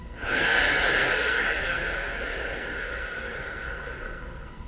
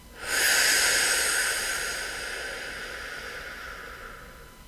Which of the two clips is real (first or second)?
second